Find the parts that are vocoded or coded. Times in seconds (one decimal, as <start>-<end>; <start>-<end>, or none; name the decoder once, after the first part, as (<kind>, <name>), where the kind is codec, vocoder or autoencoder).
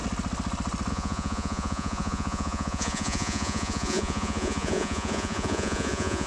0.9-6.3 (vocoder, Vocos)